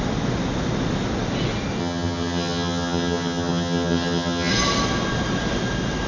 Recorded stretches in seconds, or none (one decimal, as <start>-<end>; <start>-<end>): 0.0-1.8; 4.5-6.1